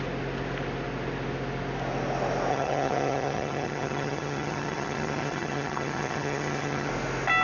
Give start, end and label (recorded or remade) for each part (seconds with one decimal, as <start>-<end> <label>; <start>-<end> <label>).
0.0-2.5 recorded; 2.5-6.9 remade; 6.9-7.4 recorded